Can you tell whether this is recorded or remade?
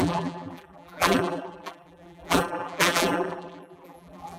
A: remade